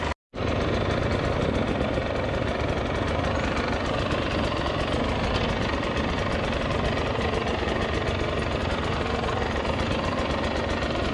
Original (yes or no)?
yes